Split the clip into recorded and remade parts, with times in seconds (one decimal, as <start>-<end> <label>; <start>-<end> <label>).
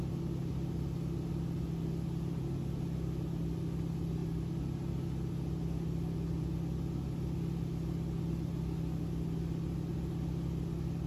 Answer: 0.0-11.1 recorded